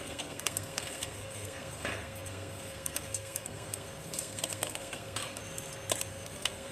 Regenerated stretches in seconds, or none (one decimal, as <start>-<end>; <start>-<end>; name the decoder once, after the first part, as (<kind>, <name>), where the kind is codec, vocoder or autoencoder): 0.0-5.4 (codec, SNAC); 6.1-6.7